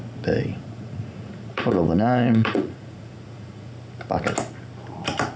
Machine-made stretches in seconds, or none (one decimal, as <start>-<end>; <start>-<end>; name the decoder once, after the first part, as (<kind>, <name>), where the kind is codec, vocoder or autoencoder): 0.5-3.7 (vocoder, Vocos)